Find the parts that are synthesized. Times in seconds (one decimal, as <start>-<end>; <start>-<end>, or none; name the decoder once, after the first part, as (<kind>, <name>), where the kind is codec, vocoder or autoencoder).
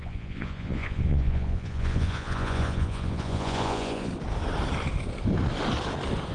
0.0-4.1 (vocoder, Vocos)